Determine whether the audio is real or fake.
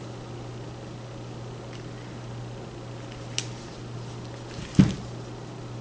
real